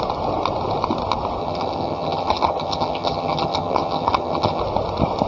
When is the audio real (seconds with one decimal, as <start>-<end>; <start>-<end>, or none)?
0.0-1.4; 4.6-5.3